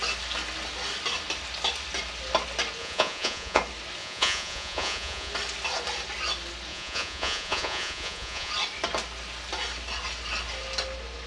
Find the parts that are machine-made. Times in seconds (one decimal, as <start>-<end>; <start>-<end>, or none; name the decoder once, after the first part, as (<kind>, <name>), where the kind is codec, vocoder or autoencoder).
2.8-3.6 (vocoder, Vocos); 4.0-5.3; 6.7-8.5